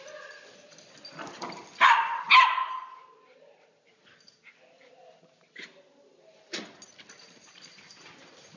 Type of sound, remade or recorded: recorded